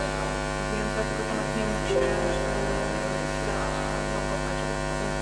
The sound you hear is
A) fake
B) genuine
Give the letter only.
B